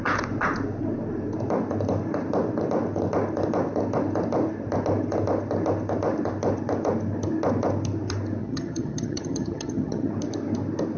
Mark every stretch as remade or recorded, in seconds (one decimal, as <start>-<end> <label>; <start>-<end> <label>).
0.0-8.4 recorded; 8.4-10.1 remade; 10.1-11.0 recorded